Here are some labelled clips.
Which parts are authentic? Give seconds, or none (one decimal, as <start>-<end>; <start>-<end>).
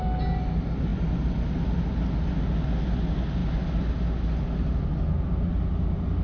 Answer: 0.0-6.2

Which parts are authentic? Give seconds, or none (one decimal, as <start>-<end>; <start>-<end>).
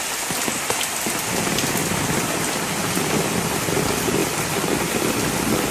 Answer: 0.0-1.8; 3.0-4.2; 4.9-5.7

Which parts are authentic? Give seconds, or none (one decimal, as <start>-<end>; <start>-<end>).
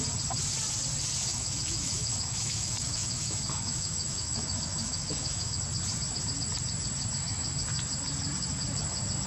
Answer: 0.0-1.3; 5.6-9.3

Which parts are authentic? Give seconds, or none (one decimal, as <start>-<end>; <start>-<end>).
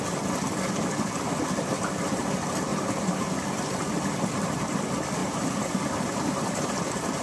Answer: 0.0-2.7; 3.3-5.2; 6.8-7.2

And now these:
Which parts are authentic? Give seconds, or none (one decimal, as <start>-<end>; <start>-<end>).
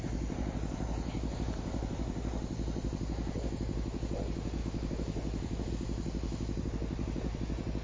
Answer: 0.0-4.6; 5.7-7.8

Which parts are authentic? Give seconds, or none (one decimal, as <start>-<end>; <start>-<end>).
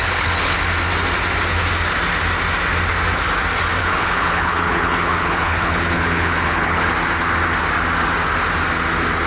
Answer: 0.6-3.8; 6.9-9.3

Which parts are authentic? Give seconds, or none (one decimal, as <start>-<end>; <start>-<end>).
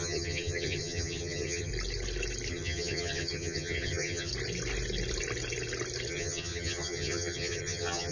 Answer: 1.7-2.5; 4.3-6.1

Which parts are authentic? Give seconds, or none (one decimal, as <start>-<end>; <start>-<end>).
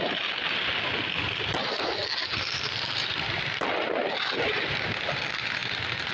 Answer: 2.0-2.8; 5.6-6.1